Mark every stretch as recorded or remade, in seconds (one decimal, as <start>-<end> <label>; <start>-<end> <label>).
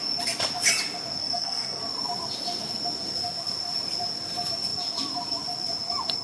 0.0-1.2 recorded; 1.2-1.8 remade; 1.8-6.2 recorded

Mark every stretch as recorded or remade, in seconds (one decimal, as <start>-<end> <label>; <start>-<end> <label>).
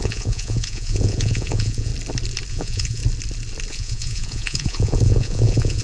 0.0-1.9 remade; 1.9-2.5 recorded; 2.5-3.0 remade; 3.0-3.7 recorded; 3.7-5.8 remade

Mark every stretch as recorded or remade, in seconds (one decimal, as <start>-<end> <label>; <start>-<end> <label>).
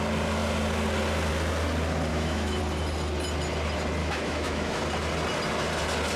0.0-2.1 recorded; 2.1-2.6 remade; 2.6-4.0 recorded; 4.0-4.8 remade; 4.8-6.2 recorded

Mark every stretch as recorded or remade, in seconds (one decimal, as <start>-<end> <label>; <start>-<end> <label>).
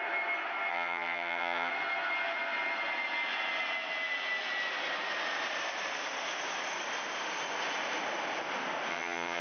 0.0-0.7 recorded; 0.7-1.7 remade; 1.7-8.9 recorded; 8.9-9.4 remade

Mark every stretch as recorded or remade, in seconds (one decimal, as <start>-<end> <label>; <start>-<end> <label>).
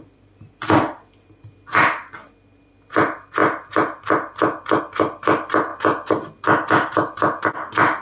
0.0-8.0 recorded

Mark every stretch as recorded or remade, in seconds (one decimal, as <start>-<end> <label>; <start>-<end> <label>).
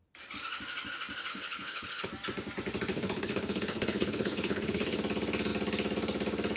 0.0-1.3 recorded; 1.3-2.1 remade; 2.1-2.9 recorded; 2.9-5.0 remade; 5.0-6.6 recorded